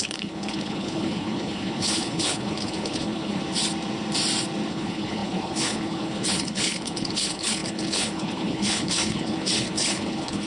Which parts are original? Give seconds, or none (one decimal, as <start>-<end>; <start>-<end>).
3.4-4.7